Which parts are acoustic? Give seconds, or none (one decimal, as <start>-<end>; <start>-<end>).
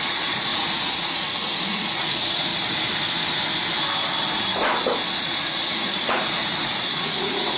2.5-5.2